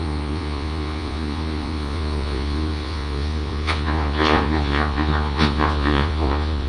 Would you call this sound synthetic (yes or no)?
yes